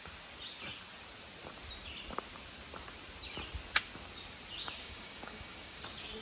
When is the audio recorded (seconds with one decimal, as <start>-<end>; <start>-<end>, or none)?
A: 0.0-4.6; 5.8-6.2